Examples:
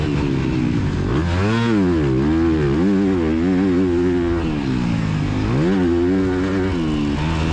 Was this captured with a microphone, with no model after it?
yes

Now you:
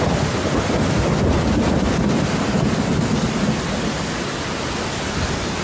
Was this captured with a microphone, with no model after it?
yes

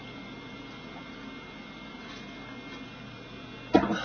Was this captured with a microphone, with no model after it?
yes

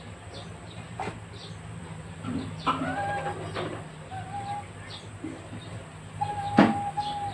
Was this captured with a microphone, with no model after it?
yes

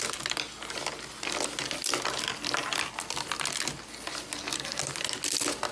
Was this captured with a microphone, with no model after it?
yes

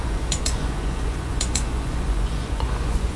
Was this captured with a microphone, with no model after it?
no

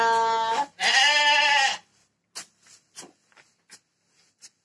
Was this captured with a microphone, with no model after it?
yes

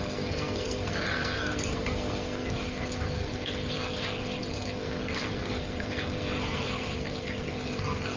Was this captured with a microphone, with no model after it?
no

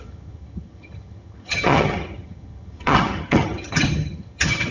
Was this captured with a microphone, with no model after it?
no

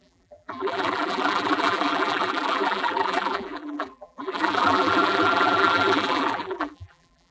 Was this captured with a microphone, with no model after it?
no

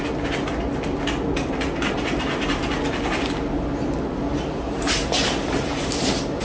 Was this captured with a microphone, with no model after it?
yes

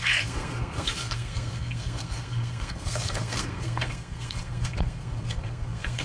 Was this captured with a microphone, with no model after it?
no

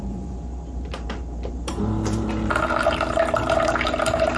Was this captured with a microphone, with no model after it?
no